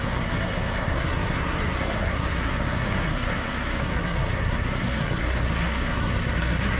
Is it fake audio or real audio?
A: fake